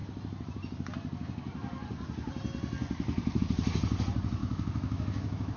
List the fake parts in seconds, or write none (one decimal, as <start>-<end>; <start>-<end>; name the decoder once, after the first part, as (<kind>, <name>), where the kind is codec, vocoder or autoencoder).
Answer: 4.4-5.6 (autoencoder, DAC-VAE)